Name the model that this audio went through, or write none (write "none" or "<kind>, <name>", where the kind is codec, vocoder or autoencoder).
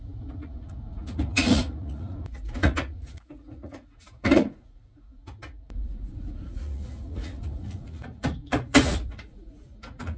vocoder, Vocos